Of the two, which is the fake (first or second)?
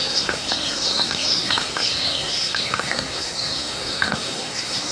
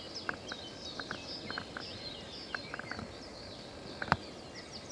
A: first